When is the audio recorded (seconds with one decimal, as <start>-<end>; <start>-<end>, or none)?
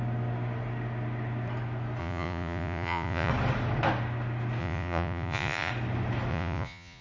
0.0-2.0; 3.3-4.6; 5.7-6.3